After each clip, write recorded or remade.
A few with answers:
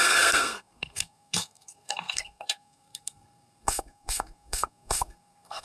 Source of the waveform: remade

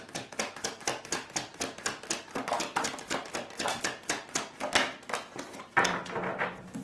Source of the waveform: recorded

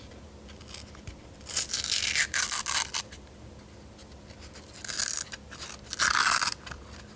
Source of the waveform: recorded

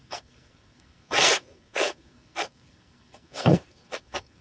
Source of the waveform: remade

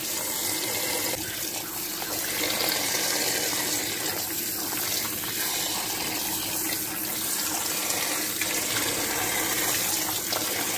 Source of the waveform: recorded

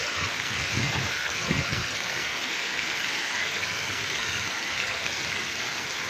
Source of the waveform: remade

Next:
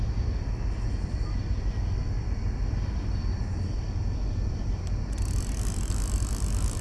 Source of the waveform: recorded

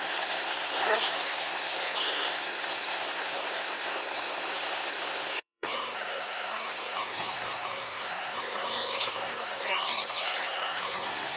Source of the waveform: remade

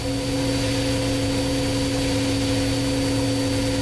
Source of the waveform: recorded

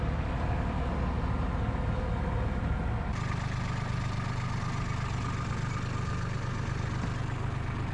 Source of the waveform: recorded